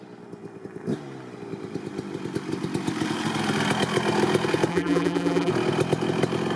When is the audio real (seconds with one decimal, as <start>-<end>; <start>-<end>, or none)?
0.0-4.7; 5.5-6.6